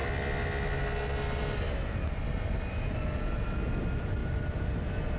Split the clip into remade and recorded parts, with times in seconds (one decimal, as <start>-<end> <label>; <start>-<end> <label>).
0.0-5.2 recorded